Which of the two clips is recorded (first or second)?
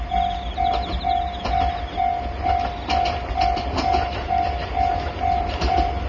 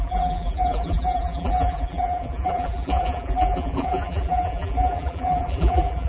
first